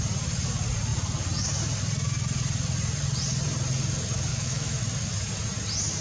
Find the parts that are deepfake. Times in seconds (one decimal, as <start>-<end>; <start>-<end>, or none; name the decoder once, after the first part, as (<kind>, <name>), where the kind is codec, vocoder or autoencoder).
4.3-4.8 (autoencoder, DAC-VAE)